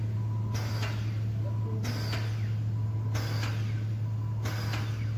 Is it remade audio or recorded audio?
recorded